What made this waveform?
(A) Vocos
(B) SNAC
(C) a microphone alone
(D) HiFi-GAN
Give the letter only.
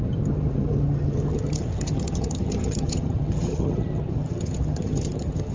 D